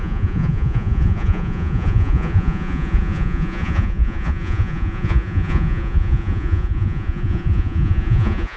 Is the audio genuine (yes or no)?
no